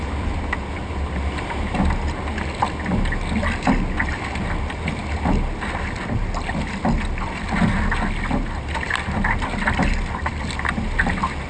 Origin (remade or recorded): recorded